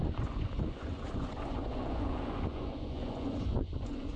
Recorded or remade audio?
remade